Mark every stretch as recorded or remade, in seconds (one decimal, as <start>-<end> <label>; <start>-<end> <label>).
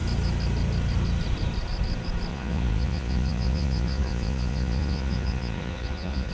0.0-2.3 recorded; 2.3-6.3 remade